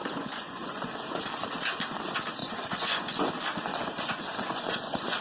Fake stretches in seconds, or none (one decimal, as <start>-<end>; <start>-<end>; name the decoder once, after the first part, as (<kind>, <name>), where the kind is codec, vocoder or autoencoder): 0.0-1.3 (vocoder, Vocos); 2.4-3.3; 3.7-5.2